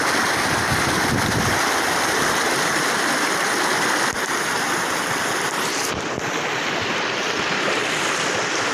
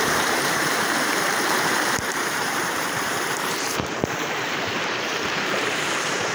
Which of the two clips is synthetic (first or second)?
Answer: second